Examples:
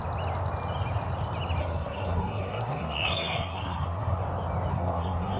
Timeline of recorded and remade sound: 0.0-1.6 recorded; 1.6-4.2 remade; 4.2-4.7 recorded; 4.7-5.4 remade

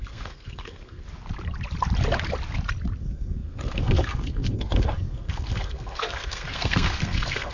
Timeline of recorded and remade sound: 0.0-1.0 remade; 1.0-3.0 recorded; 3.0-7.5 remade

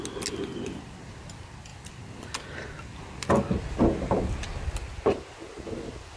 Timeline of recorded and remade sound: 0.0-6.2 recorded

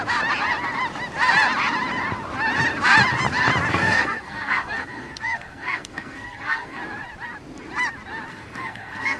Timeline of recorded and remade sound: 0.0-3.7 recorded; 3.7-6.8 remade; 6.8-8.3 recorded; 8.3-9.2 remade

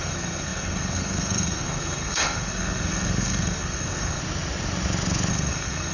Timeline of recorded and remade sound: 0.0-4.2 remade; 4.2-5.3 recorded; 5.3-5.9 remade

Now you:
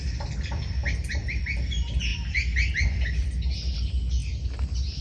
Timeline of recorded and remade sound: 0.0-5.0 recorded